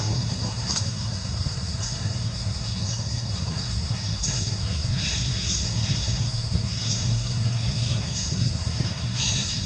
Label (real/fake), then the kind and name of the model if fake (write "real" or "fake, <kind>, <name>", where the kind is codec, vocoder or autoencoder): fake, codec, SNAC